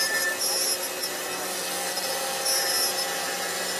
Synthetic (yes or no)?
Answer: no